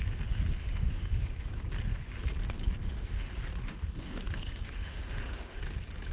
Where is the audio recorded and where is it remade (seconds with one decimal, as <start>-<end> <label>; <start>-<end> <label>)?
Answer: 0.0-0.6 recorded; 0.6-1.5 remade; 1.5-2.8 recorded; 2.8-3.3 remade; 3.3-3.7 recorded; 3.7-5.6 remade; 5.6-6.1 recorded